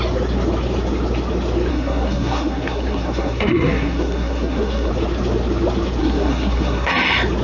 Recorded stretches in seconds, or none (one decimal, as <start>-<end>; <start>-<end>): 0.0-1.7; 4.9-6.0; 6.9-7.4